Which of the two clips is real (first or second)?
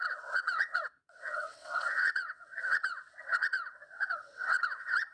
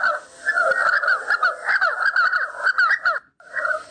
second